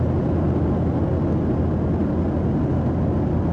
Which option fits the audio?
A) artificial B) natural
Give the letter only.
B